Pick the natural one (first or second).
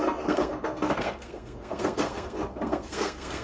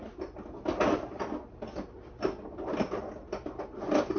second